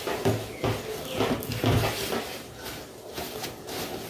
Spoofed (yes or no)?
no